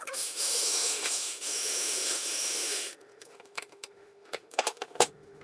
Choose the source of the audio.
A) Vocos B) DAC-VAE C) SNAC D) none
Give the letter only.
B